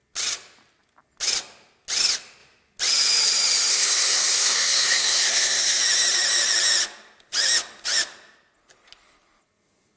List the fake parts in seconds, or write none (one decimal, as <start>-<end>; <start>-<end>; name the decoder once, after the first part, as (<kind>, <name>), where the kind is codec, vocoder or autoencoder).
3.7-5.8 (codec, SNAC)

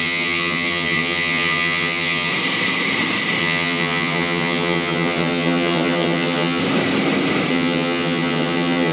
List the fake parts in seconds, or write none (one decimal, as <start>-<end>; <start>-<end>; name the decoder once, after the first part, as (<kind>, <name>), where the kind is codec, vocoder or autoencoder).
0.0-2.3 (vocoder, HiFi-GAN); 3.4-6.6; 7.5-8.9